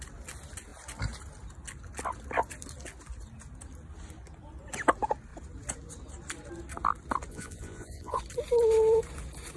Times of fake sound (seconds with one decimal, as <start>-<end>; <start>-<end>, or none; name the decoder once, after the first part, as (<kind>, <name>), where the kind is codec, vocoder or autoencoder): 7.3-8.2 (vocoder, Vocos)

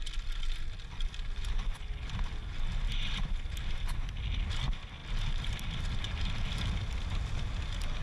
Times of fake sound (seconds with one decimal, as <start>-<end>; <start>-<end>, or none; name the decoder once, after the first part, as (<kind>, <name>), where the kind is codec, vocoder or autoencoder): none

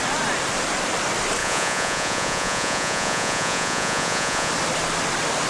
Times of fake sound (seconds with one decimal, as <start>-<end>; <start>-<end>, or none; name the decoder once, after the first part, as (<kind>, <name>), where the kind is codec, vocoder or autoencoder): 1.4-4.5 (vocoder, Vocos)

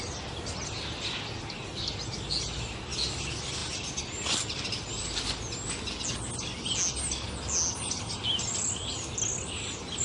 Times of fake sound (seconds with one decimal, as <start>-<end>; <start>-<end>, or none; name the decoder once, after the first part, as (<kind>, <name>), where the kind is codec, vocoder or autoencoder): none

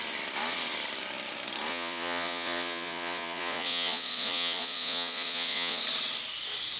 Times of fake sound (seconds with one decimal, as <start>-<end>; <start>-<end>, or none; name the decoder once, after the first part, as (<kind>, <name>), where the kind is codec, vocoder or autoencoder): 1.7-5.8 (vocoder, Vocos)

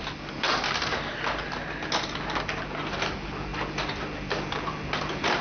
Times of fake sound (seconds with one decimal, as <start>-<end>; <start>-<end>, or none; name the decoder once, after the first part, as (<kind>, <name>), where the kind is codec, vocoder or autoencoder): none

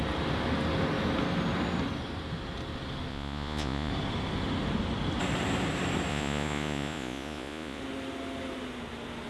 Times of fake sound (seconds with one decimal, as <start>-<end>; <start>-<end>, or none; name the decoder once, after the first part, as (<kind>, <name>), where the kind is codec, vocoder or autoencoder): 3.1-3.9 (vocoder, Vocos); 6.1-7.8

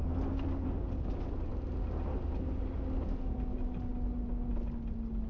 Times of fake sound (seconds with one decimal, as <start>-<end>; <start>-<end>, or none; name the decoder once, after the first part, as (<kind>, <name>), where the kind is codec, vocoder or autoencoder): none